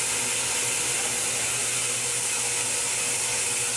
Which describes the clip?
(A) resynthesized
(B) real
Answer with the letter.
B